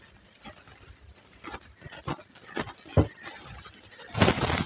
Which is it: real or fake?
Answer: real